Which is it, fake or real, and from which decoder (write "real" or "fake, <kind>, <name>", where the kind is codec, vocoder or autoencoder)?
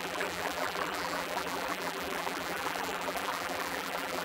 fake, vocoder, BigVGAN v2